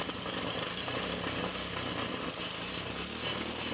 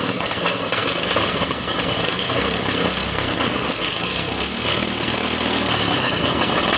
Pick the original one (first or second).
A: first